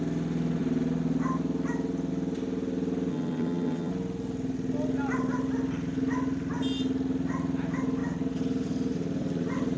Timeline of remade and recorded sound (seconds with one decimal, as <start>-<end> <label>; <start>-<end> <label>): 0.0-3.1 recorded; 3.1-3.9 remade; 3.9-9.8 recorded